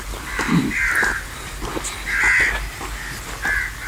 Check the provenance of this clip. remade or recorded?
recorded